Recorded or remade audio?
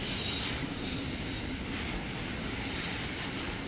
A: remade